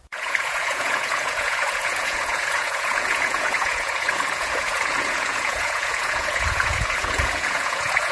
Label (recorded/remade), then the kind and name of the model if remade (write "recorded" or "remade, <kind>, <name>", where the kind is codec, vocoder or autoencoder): remade, vocoder, Vocos